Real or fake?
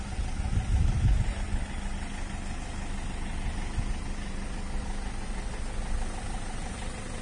real